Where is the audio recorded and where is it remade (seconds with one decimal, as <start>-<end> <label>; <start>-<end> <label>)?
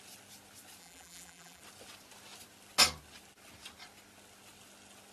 0.0-0.8 recorded; 0.8-1.6 remade; 1.6-5.1 recorded